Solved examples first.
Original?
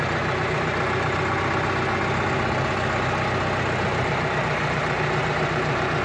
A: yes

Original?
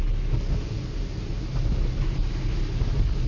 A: yes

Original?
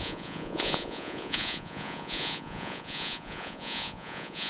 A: no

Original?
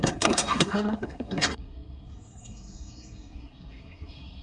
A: no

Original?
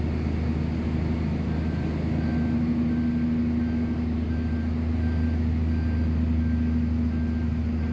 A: yes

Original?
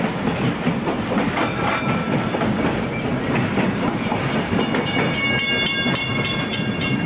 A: yes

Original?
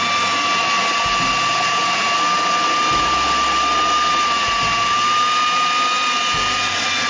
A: yes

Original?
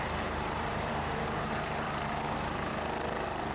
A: no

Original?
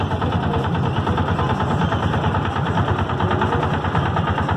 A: yes